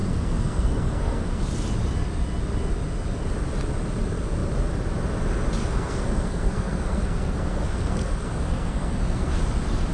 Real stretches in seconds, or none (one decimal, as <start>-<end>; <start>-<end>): 1.4-5.6; 9.3-9.9